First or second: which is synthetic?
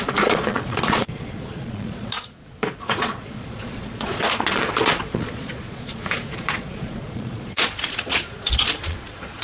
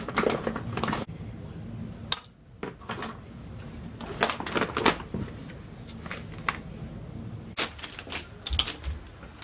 first